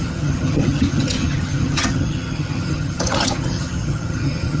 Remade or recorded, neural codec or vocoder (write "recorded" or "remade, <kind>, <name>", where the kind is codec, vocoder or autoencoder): remade, vocoder, HiFi-GAN